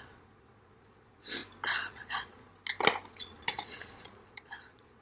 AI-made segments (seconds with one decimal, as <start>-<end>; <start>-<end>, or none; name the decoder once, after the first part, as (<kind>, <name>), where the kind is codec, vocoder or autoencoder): 0.0-1.4 (vocoder, Vocos); 1.9-2.5; 3.1-5.0